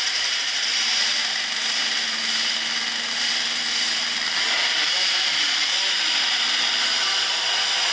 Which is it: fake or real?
real